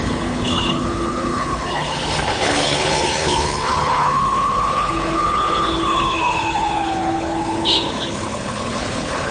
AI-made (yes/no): yes